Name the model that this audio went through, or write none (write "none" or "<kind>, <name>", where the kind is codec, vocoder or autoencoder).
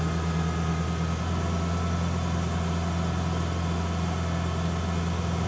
none